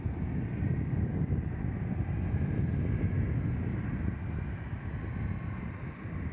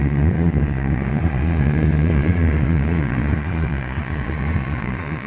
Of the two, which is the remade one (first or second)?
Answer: second